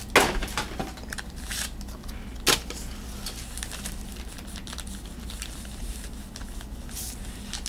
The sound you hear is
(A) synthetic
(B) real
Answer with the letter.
B